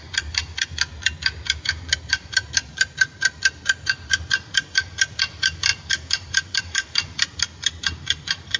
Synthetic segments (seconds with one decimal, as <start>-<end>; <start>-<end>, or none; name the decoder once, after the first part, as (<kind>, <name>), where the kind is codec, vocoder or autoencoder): 0.0-0.9 (vocoder, BigVGAN v2); 1.6-8.6